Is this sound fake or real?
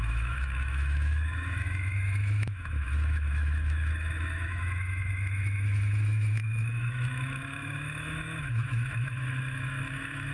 fake